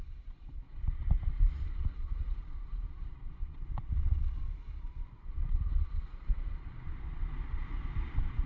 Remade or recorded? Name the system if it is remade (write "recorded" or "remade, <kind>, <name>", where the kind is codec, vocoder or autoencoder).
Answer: remade, vocoder, Vocos